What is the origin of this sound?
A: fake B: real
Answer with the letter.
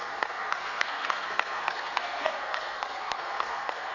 A